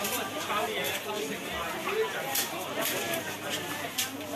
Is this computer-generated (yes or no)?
no